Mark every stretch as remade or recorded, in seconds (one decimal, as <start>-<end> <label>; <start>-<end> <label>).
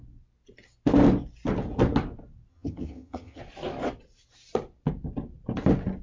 0.0-2.5 recorded; 2.5-3.4 remade; 3.4-6.0 recorded